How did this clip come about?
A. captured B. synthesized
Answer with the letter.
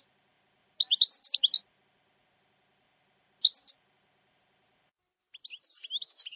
A